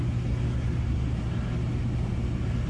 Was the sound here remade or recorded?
recorded